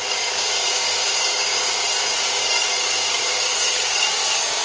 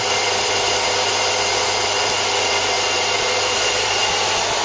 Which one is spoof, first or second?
first